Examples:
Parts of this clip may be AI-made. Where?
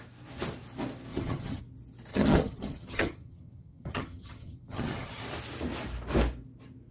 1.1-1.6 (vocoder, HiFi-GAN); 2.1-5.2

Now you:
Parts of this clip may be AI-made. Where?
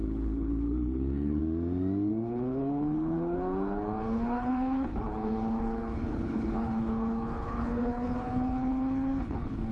0.0-1.4 (codec, HILCodec); 2.1-9.7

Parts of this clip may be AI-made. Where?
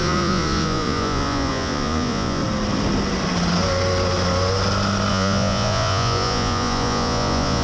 0.0-2.4 (vocoder, Vocos); 5.1-7.6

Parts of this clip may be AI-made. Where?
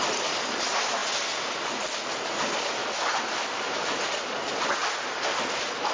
0.0-1.0 (vocoder, BigVGAN v2); 2.1-2.8; 3.6-4.8; 5.5-5.9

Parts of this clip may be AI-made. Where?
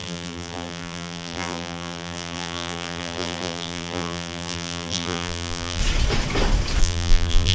0.0-5.8 (vocoder, BigVGAN v2); 6.8-7.5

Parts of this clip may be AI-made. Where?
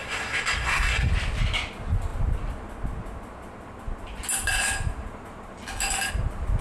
0.0-1.1 (codec, SNAC)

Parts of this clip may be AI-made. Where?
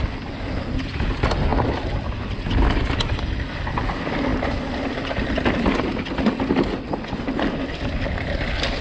none